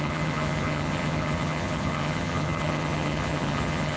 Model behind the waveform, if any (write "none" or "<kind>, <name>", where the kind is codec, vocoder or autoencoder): vocoder, HiFi-GAN